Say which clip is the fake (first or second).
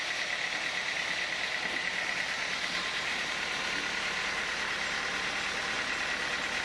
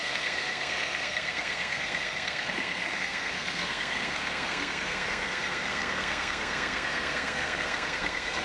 second